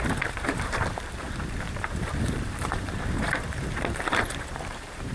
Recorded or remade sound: remade